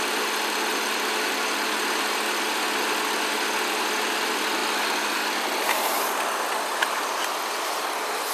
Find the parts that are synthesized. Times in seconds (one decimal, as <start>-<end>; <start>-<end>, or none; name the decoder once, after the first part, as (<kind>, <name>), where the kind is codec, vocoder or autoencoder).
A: 4.6-7.7 (vocoder, BigVGAN v2)